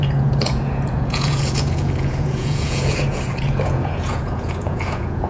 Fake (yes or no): yes